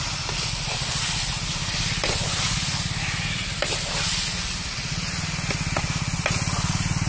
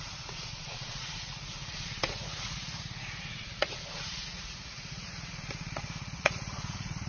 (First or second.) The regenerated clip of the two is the second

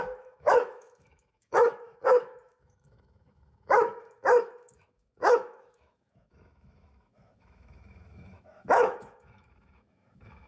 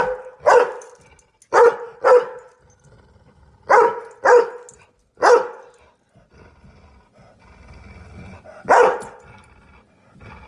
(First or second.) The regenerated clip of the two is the first